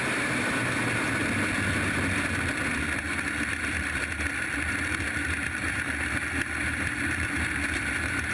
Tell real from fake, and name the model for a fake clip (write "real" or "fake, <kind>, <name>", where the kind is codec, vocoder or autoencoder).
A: real